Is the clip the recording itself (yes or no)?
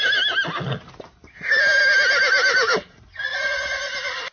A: yes